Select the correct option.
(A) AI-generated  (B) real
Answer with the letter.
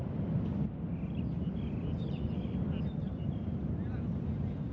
B